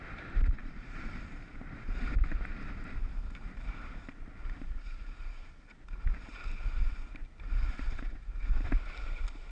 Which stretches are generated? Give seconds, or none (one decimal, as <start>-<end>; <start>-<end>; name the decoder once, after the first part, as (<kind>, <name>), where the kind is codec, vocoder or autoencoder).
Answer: 0.6-5.3 (vocoder, BigVGAN v2)